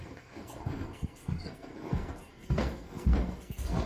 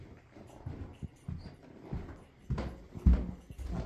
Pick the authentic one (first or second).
second